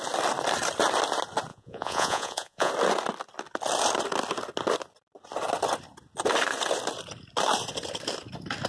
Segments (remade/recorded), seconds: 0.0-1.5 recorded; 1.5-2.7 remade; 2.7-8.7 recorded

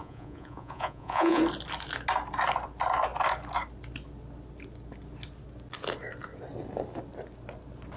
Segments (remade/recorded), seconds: 0.0-1.4 remade; 1.4-8.0 recorded

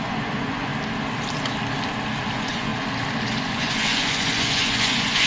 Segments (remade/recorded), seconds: 0.0-0.7 remade; 0.7-2.3 recorded; 2.3-2.7 remade; 2.7-3.3 recorded; 3.3-5.3 remade

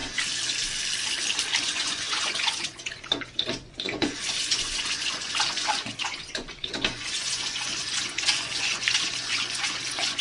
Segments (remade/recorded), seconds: 0.0-1.6 recorded; 1.6-10.2 remade

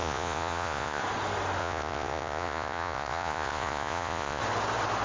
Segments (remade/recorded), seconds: 0.0-1.0 remade; 1.0-1.6 recorded; 1.6-4.4 remade; 4.4-5.0 recorded

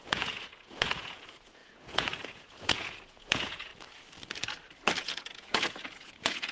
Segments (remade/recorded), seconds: 0.0-3.7 remade; 3.7-5.0 recorded; 5.0-6.5 remade

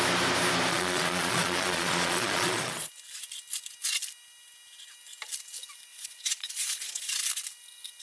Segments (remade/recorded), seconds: 0.0-0.7 recorded; 0.7-2.9 remade; 2.9-5.9 recorded; 5.9-7.2 remade; 7.2-8.0 recorded